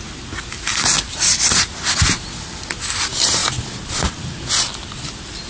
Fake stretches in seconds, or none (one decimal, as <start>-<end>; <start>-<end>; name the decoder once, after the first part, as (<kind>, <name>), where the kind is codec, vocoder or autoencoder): none